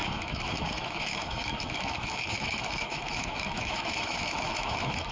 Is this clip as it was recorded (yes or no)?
no